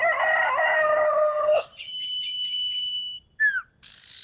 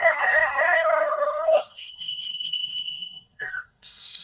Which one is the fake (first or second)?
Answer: second